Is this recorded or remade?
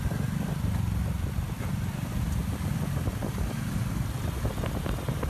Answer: recorded